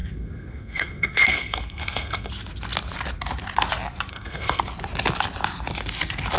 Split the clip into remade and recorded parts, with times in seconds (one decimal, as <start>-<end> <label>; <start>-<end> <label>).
0.0-2.3 remade; 2.3-4.1 recorded; 4.1-4.6 remade; 4.6-6.4 recorded